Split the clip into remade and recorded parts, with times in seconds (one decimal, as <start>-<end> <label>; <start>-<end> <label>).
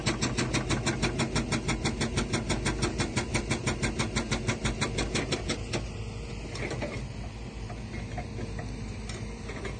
0.0-9.8 recorded